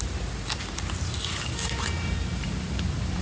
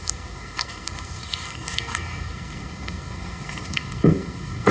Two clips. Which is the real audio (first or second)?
first